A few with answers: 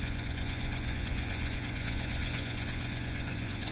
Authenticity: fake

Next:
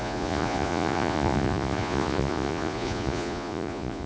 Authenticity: fake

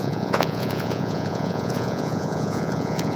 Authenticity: fake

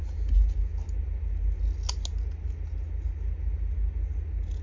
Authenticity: real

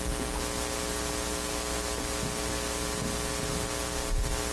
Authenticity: real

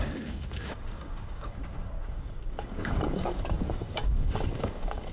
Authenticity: fake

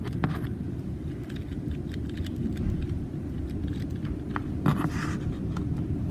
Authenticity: real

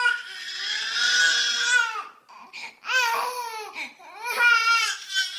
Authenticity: real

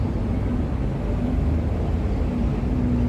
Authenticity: real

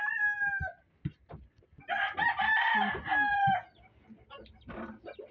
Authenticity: real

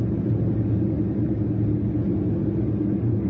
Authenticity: real